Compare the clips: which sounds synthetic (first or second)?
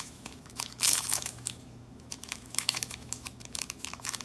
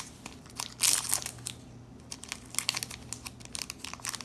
first